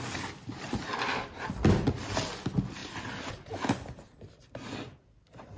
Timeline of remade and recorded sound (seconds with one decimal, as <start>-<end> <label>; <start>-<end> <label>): 0.0-5.6 recorded